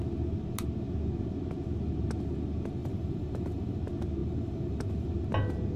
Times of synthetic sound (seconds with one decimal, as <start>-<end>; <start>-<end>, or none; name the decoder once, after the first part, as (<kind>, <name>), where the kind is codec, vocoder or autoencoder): 2.8-3.8 (vocoder, BigVGAN v2); 4.2-5.1